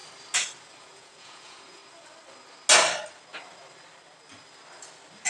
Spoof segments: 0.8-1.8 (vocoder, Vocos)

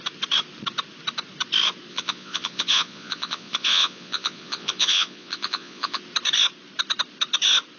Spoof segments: 1.9-6.0 (vocoder, Vocos)